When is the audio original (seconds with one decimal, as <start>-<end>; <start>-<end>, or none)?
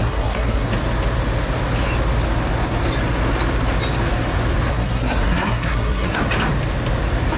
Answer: 0.7-4.7; 6.2-7.4